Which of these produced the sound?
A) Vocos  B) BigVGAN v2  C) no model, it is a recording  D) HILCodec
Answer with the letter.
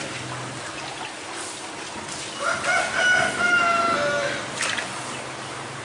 C